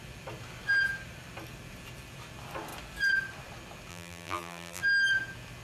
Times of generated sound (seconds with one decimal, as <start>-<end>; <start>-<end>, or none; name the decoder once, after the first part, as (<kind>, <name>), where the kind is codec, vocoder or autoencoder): 3.9-4.8 (vocoder, BigVGAN v2)